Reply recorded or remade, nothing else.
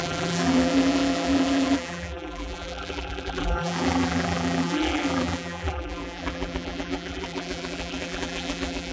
remade